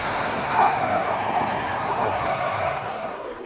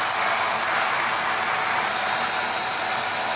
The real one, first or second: second